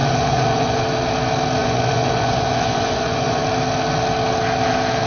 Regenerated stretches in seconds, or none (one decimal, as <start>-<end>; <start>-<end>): 0.0-0.8; 1.6-3.4

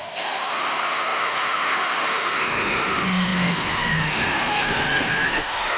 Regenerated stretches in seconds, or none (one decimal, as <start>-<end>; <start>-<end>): 0.0-5.8